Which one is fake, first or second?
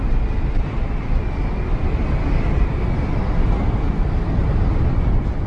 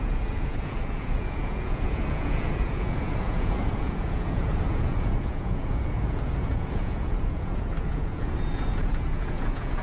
second